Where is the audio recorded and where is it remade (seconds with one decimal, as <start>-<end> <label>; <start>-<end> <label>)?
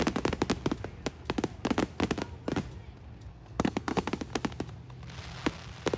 0.0-3.3 recorded; 3.3-4.1 remade; 4.1-6.0 recorded